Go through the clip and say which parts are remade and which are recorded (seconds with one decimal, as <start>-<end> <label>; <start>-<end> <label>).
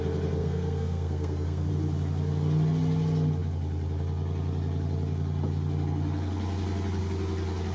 0.0-0.4 recorded; 0.4-1.7 remade; 1.7-7.7 recorded